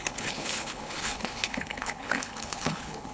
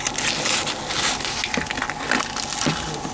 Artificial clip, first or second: first